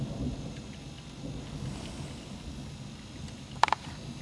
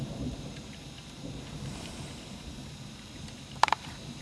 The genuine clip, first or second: first